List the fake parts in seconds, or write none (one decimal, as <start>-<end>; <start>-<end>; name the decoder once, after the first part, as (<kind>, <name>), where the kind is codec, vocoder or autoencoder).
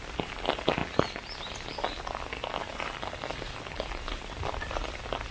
none